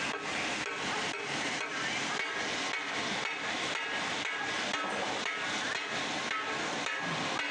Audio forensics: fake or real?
real